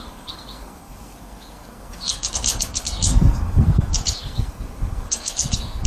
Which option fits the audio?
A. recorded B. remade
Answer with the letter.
B